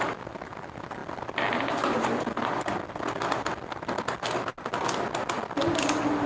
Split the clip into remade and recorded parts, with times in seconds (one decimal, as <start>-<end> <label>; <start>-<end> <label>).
0.0-6.3 recorded

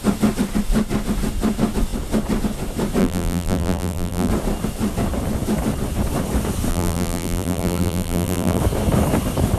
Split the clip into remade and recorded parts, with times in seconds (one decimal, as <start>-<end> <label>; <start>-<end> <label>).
0.0-3.0 recorded; 3.0-4.3 remade; 4.3-6.7 recorded; 6.7-8.6 remade; 8.6-9.6 recorded

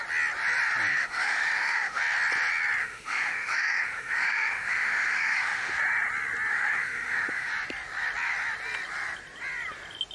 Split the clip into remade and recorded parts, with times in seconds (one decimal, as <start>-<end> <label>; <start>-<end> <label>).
0.0-0.9 recorded; 0.9-2.0 remade; 2.0-2.8 recorded; 2.8-5.7 remade; 5.7-6.5 recorded; 6.5-7.5 remade; 7.5-10.1 recorded

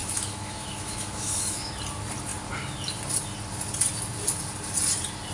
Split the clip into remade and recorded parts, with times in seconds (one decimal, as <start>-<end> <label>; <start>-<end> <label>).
0.0-1.7 remade; 1.7-5.3 recorded

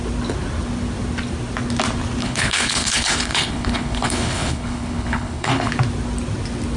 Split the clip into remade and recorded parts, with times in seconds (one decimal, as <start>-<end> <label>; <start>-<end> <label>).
0.0-2.2 recorded; 2.2-5.7 remade; 5.7-6.8 recorded

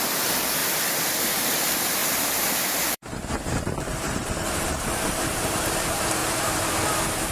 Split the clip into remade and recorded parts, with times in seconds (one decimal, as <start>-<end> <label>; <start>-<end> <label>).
0.0-0.6 remade; 0.6-1.3 recorded; 1.3-7.3 remade